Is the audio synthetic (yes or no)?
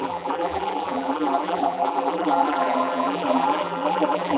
yes